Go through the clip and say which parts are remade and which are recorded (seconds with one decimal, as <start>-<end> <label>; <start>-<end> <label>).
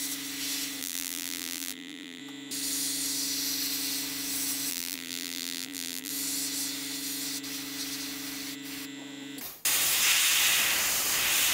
0.0-0.8 recorded; 0.8-2.2 remade; 2.2-4.7 recorded; 4.7-6.1 remade; 6.1-11.5 recorded